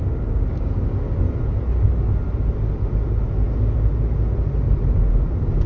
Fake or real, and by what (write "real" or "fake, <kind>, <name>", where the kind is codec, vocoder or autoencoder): real